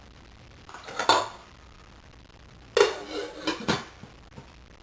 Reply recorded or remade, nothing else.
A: recorded